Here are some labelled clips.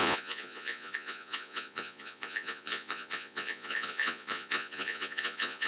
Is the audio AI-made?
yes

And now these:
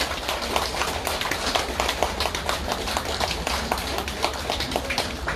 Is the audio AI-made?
no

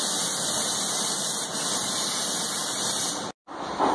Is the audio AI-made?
no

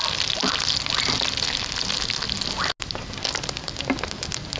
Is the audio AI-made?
no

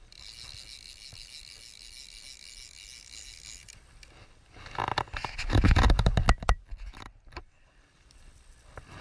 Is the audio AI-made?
no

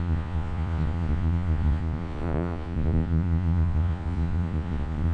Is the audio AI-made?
yes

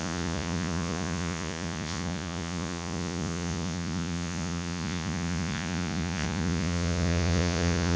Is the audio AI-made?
yes